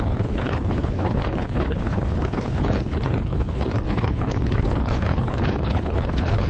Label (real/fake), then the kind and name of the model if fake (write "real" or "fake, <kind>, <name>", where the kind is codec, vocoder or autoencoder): fake, codec, HILCodec